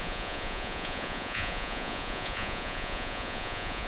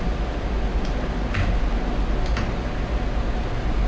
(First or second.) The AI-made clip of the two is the first